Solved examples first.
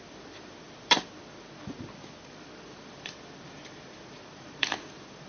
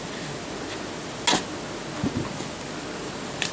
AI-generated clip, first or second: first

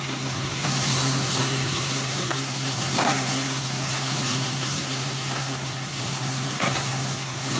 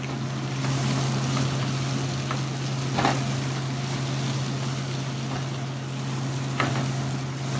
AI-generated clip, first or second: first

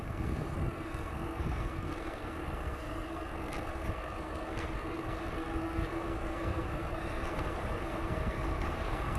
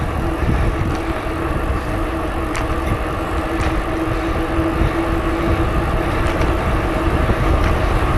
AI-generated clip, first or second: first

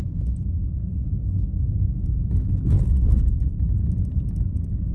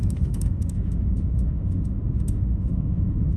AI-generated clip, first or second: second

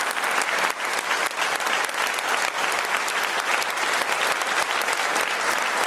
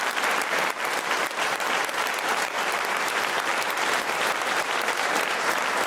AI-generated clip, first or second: second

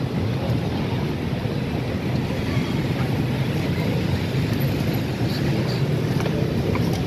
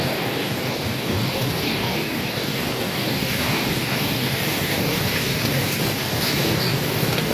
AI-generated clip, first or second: second